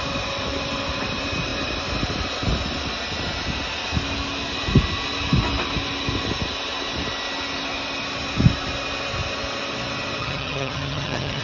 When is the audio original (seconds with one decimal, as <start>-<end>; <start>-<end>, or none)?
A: 0.0-10.2